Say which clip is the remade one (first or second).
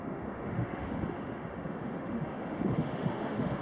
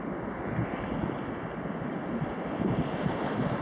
first